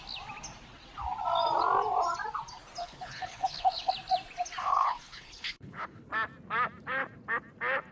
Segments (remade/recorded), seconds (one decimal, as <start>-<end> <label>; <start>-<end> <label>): 0.0-2.8 recorded; 2.8-3.9 remade; 3.9-4.6 recorded; 4.6-6.1 remade; 6.1-7.9 recorded

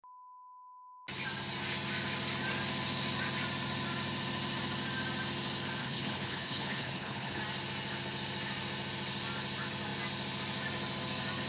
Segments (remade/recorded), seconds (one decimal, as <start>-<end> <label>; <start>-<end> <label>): 0.0-5.8 recorded; 5.8-7.4 remade; 7.4-11.5 recorded

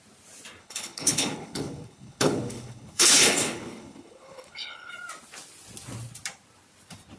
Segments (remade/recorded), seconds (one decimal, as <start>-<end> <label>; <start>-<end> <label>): 0.0-0.6 recorded; 0.6-4.9 remade; 4.9-7.2 recorded

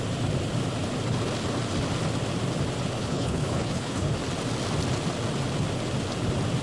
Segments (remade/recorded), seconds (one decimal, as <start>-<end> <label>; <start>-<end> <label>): 0.0-3.0 recorded; 3.0-4.1 remade; 4.1-6.6 recorded